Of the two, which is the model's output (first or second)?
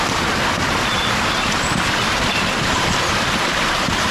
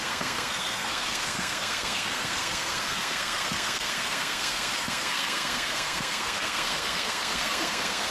second